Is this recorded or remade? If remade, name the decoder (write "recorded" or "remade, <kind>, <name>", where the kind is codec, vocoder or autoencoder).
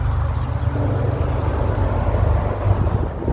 recorded